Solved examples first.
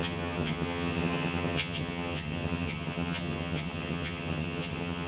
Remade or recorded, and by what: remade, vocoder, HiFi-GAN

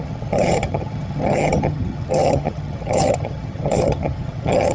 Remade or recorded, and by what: remade, vocoder, HiFi-GAN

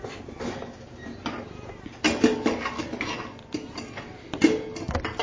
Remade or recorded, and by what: recorded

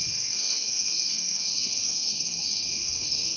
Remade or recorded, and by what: remade, codec, SNAC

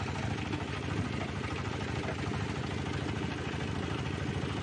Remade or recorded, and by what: recorded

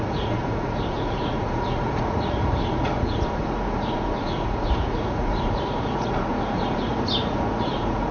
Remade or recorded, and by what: remade, vocoder, Vocos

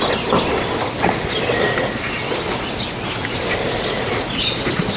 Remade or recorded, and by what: recorded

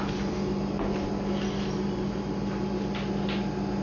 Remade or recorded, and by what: remade, vocoder, BigVGAN v2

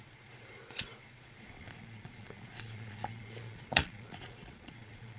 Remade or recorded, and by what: remade, vocoder, Vocos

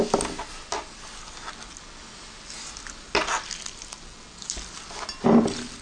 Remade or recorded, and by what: recorded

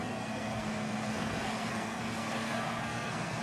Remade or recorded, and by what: remade, codec, SNAC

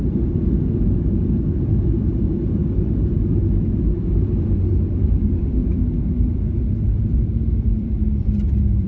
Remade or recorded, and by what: remade, vocoder, BigVGAN v2